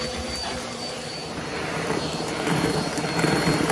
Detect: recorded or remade remade